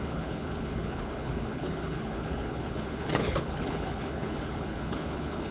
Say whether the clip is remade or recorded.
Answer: remade